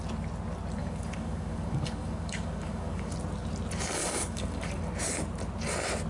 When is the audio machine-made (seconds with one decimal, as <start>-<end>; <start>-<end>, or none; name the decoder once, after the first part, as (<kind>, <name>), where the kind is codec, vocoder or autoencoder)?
0.8-3.1 (codec, DAC); 4.0-4.8